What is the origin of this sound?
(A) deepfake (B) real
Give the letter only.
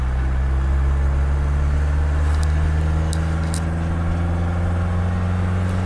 B